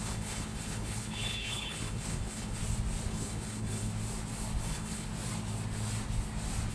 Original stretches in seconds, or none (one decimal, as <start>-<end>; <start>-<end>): 2.6-3.1; 3.9-4.6; 5.1-6.7